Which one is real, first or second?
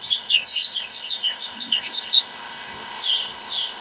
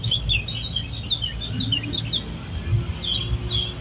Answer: second